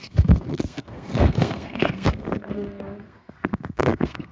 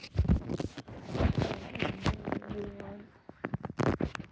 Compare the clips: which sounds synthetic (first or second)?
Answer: first